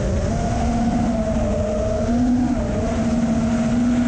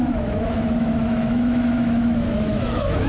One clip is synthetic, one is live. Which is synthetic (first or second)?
second